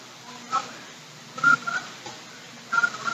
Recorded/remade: recorded